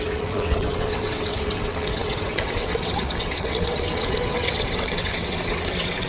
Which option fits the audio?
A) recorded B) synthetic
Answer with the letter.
B